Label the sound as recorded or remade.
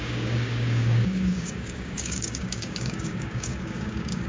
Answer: remade